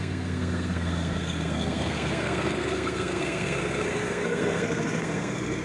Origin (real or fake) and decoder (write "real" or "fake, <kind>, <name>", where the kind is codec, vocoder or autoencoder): fake, codec, SNAC